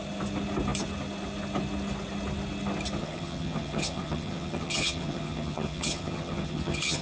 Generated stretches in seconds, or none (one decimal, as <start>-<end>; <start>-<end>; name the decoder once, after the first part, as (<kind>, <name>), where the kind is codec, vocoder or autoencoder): 3.0-7.0 (vocoder, HiFi-GAN)